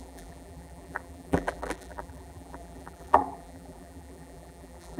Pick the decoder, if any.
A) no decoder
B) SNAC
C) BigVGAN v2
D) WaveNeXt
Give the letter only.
C